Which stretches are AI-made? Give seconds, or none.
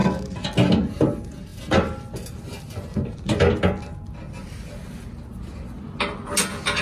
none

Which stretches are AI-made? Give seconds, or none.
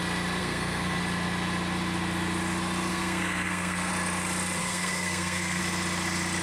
0.4-1.0 (codec, SNAC); 2.9-3.9; 4.6-5.6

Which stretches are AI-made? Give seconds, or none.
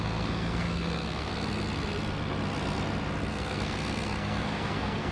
0.0-1.3 (codec, SNAC); 3.3-5.1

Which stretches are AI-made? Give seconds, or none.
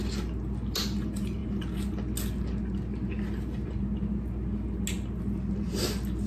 none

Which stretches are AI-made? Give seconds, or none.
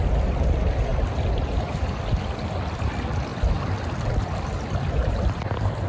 none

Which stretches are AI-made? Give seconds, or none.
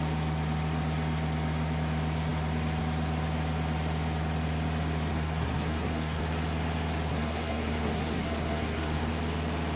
5.1-6.2 (codec, SNAC); 7.1-9.1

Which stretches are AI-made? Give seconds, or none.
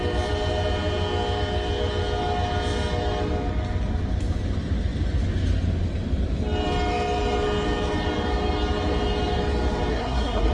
9.9-10.5 (codec, SNAC)